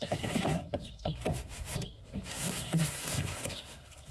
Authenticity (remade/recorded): remade